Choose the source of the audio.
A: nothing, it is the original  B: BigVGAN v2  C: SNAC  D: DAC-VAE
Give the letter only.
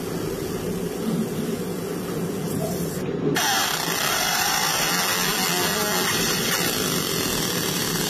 A